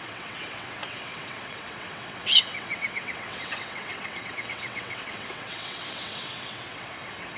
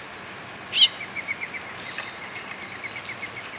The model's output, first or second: first